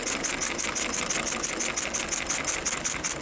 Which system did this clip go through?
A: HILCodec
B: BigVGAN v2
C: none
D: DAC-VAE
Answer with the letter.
C